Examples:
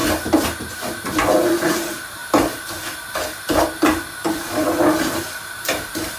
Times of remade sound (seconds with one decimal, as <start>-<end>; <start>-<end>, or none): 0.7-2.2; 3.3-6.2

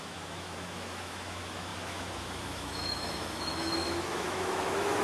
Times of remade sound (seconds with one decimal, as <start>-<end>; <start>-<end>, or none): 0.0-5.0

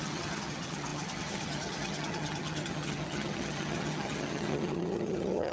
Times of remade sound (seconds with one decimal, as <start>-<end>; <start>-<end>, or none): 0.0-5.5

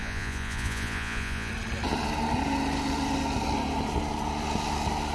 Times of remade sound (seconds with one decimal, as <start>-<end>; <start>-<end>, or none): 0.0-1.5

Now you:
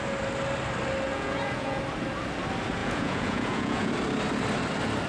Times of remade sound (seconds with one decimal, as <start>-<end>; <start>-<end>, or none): 1.1-1.8; 2.8-3.9

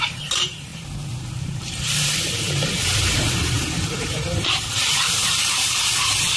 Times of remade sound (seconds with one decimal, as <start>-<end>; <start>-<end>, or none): 0.0-0.7; 3.2-6.4

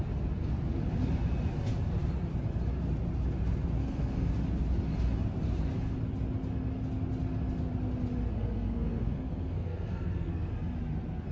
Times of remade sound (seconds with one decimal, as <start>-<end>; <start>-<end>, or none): 3.8-4.3; 8.3-10.5